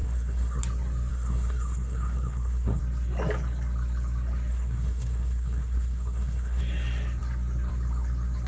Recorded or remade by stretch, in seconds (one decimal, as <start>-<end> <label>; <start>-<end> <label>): 0.0-0.6 remade; 0.6-1.1 recorded; 1.1-2.8 remade; 2.8-4.5 recorded; 4.5-6.6 remade; 6.6-8.5 recorded